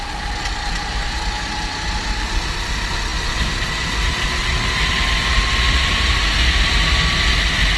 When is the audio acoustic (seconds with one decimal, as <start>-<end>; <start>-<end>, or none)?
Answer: 0.0-7.8